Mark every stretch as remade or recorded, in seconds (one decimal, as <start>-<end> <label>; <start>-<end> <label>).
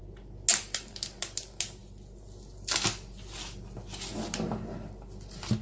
0.0-5.6 recorded